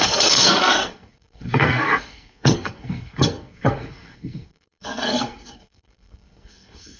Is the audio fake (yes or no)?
yes